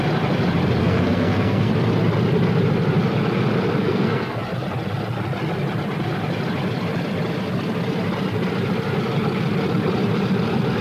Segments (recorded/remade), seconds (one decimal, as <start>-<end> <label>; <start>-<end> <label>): 0.0-0.8 recorded; 0.8-1.7 remade; 1.7-3.8 recorded; 3.8-4.4 remade; 4.4-10.8 recorded